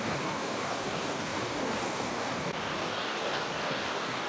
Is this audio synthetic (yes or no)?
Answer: yes